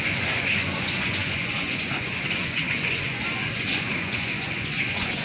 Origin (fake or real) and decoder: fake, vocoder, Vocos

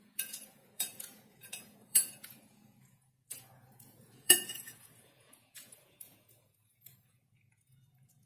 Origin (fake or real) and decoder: fake, vocoder, Vocos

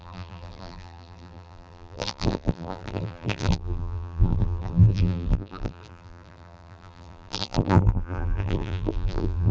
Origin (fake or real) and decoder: fake, vocoder, BigVGAN v2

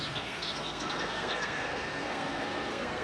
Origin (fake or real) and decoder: fake, codec, SNAC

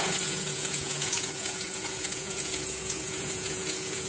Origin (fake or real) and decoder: fake, vocoder, Vocos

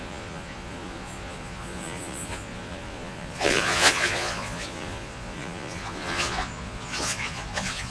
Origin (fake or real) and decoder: fake, vocoder, Vocos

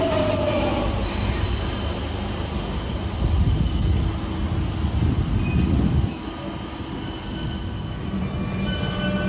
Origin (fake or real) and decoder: real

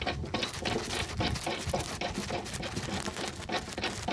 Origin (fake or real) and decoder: real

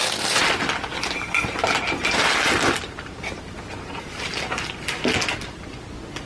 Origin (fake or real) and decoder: real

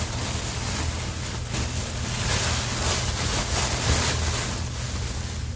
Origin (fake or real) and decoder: real